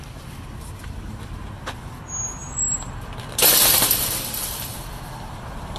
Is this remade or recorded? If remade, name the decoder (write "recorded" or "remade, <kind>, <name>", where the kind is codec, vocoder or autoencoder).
remade, vocoder, BigVGAN v2